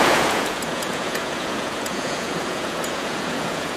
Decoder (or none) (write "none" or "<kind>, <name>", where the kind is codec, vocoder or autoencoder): vocoder, Vocos